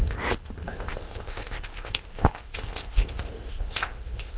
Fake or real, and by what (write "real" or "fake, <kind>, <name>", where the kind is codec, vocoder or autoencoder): fake, codec, ZipCodec